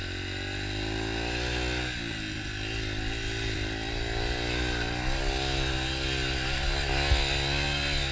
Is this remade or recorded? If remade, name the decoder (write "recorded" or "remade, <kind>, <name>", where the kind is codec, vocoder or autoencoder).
recorded